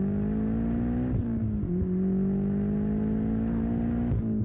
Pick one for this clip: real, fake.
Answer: real